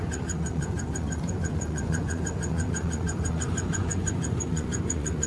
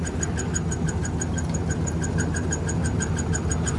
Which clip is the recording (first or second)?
second